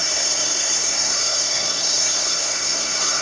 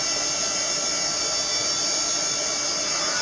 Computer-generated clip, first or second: first